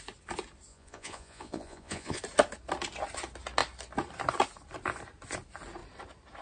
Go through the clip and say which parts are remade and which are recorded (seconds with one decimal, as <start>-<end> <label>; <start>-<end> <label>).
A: 0.0-0.7 recorded; 0.7-2.2 remade; 2.2-6.4 recorded